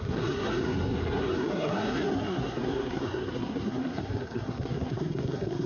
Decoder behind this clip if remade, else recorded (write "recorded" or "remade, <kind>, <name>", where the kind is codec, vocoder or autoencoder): remade, codec, SNAC